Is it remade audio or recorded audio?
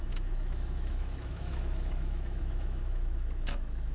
remade